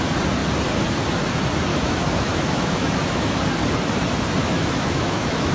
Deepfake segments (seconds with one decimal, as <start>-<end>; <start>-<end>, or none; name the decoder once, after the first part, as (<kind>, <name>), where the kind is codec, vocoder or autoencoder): 1.7-3.4 (autoencoder, DAC-VAE); 4.4-5.5